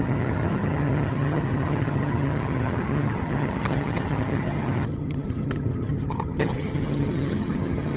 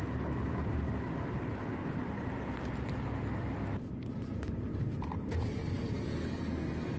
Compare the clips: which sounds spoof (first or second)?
first